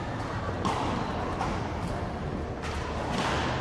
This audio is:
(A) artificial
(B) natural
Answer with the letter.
B